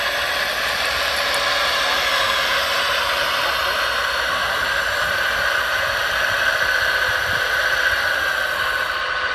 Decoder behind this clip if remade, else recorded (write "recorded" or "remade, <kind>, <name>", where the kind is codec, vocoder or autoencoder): recorded